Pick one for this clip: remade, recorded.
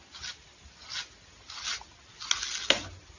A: recorded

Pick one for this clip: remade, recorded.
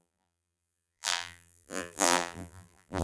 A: remade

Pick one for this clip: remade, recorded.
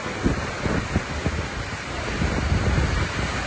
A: recorded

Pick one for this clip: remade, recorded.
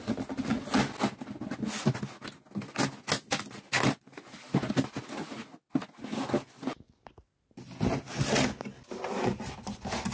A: recorded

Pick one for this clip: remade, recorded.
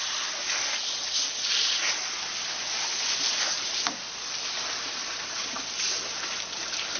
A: recorded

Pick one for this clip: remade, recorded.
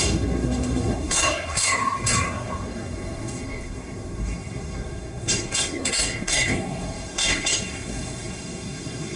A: remade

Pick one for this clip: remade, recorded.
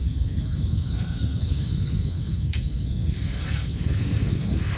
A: remade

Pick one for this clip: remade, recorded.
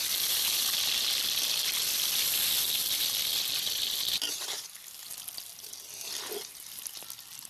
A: recorded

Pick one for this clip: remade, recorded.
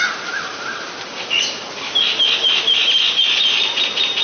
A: recorded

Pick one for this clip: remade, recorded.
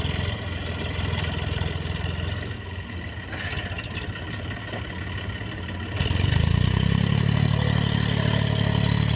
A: recorded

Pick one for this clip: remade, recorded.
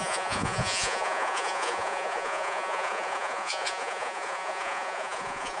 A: remade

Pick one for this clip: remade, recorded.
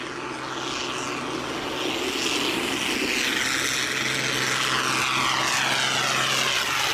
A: recorded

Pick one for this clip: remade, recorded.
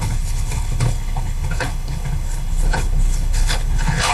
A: remade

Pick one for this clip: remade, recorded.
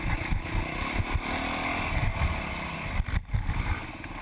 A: recorded